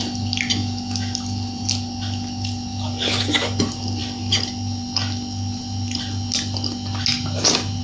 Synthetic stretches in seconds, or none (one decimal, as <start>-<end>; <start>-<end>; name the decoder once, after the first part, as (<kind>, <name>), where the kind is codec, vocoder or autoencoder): none